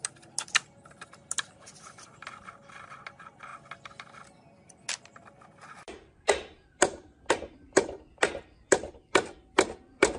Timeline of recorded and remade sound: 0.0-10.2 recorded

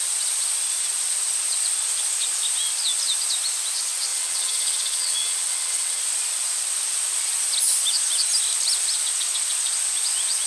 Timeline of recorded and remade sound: 0.0-4.1 recorded; 4.1-6.0 remade; 6.0-10.5 recorded

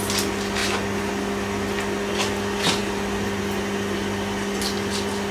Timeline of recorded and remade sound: 0.0-5.3 recorded

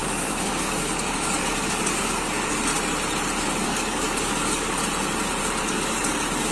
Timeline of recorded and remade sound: 0.0-2.7 remade; 2.7-3.4 recorded; 3.4-4.8 remade; 4.8-5.4 recorded; 5.4-6.5 remade